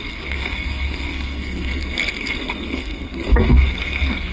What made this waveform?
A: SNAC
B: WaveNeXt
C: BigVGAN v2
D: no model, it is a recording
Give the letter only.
A